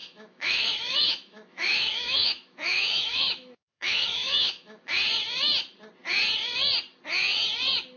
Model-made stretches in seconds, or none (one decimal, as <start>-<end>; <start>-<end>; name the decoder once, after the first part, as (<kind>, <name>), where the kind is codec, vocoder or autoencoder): 0.0-4.8 (autoencoder, DAC-VAE)